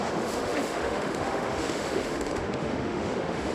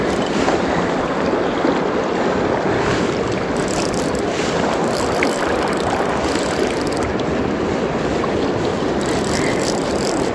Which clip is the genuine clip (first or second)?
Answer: second